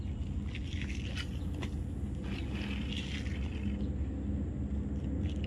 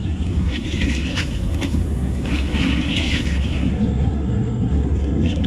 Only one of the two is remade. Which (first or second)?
second